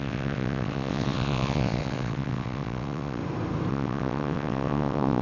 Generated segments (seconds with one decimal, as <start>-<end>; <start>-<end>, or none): 0.0-3.2; 3.7-5.2